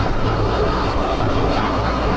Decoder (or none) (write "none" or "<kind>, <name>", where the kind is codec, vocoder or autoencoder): codec, SNAC